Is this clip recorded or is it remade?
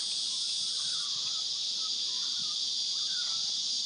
recorded